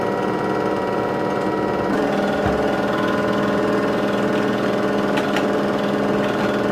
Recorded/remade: recorded